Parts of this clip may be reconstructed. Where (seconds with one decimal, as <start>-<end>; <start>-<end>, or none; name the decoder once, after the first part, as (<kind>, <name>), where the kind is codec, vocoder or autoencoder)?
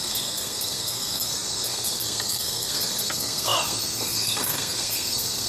0.0-5.5 (codec, SNAC)